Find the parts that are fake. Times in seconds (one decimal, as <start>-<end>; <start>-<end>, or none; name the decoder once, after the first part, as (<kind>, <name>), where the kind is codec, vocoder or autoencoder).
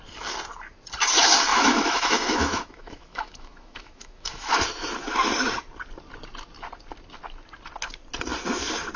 1.5-4.5 (autoencoder, DAC-VAE)